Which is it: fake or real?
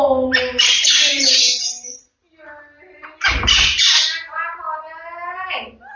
fake